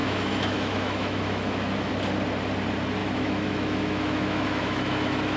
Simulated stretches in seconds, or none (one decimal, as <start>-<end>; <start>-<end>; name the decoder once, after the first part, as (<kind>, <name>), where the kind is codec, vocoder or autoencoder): 0.0-1.9 (autoencoder, DAC-VAE); 3.0-5.4

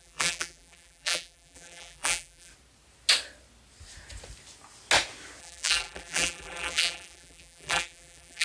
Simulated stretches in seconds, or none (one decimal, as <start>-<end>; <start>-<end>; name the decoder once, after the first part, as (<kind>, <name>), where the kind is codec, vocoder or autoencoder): 0.0-2.5 (vocoder, BigVGAN v2); 5.4-8.4